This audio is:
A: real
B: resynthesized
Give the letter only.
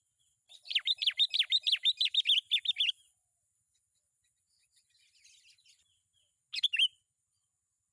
A